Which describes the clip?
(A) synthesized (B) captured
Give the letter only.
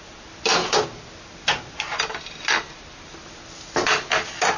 B